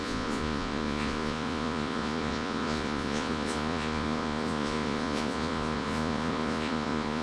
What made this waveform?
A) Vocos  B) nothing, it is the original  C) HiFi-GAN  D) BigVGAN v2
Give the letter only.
A